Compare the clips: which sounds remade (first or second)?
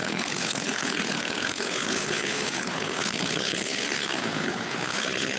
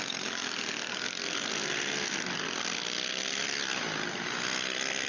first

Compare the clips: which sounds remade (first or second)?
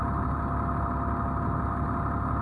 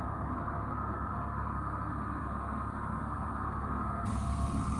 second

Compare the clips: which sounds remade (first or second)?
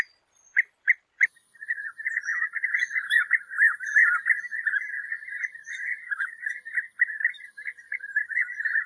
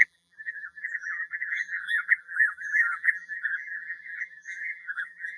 second